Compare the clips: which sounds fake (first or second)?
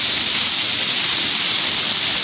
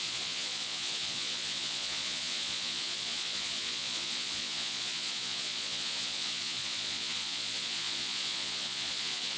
second